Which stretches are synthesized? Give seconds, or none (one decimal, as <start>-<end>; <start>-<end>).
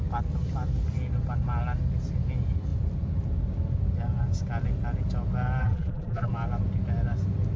5.6-6.3